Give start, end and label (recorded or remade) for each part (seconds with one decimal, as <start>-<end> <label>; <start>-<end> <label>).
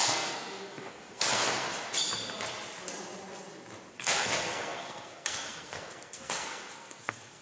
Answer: 0.0-1.7 remade; 1.7-3.9 recorded; 3.9-7.4 remade